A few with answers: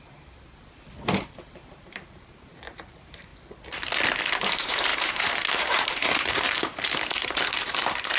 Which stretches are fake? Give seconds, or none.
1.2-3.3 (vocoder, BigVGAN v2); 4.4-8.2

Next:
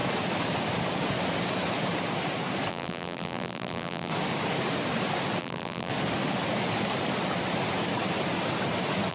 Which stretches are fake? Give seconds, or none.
2.7-4.1 (vocoder, BigVGAN v2); 5.4-5.9

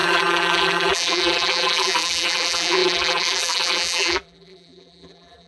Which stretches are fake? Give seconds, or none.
0.0-5.5 (vocoder, BigVGAN v2)

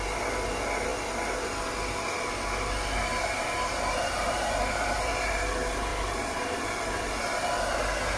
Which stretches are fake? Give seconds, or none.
3.1-5.1 (vocoder, BigVGAN v2); 5.9-6.6

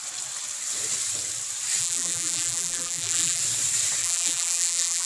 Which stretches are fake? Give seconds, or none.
1.8-3.4 (vocoder, BigVGAN v2); 4.0-5.1

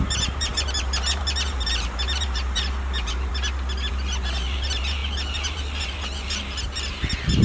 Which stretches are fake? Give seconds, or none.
0.0-3.3 (vocoder, BigVGAN v2); 3.9-7.4

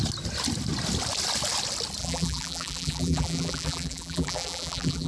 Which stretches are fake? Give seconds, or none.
2.0-5.1 (vocoder, BigVGAN v2)

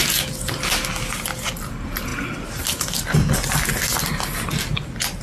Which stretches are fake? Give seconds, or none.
none